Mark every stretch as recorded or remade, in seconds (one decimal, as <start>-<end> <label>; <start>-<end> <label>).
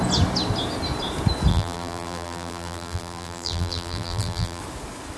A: 0.0-1.5 recorded; 1.5-4.6 remade; 4.6-5.2 recorded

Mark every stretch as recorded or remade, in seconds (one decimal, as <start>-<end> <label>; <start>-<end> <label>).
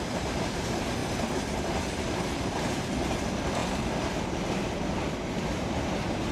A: 0.0-1.0 remade; 1.0-1.8 recorded; 1.8-6.3 remade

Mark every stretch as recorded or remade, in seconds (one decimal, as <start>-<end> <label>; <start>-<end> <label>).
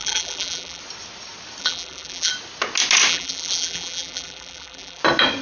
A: 0.0-0.8 remade; 0.8-1.6 recorded; 1.6-2.3 remade; 2.3-3.1 recorded; 3.1-5.0 remade; 5.0-5.4 recorded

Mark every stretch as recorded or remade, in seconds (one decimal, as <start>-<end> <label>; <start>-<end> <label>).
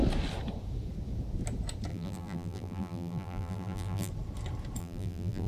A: 0.0-1.9 recorded; 1.9-4.1 remade; 4.1-4.8 recorded; 4.8-5.5 remade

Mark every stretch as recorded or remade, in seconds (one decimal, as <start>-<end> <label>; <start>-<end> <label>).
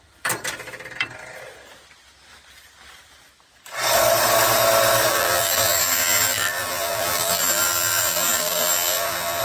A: 0.0-5.1 recorded; 5.1-9.4 remade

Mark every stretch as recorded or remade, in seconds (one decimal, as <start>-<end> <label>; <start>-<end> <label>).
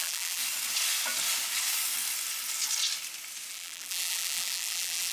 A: 0.0-0.4 remade; 0.4-3.5 recorded; 3.5-5.1 remade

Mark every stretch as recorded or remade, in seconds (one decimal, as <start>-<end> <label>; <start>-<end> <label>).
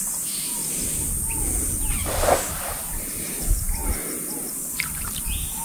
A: 0.0-0.6 remade; 0.6-2.9 recorded; 2.9-5.6 remade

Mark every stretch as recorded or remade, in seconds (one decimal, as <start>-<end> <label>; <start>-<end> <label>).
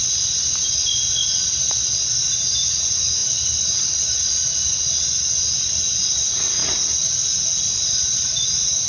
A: 0.0-6.6 recorded; 6.6-8.5 remade; 8.5-8.9 recorded